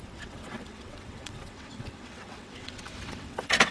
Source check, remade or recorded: remade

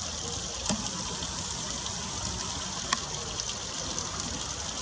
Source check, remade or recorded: recorded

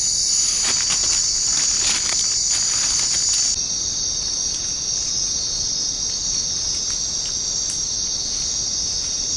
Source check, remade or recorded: recorded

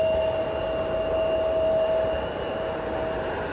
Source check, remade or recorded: recorded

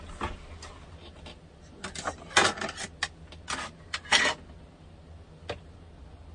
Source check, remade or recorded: recorded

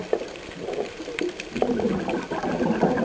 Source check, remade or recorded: recorded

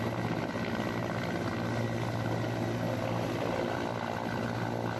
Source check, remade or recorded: recorded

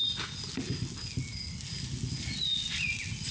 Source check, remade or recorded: recorded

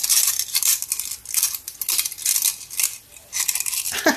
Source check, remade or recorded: recorded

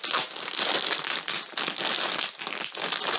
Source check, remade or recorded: recorded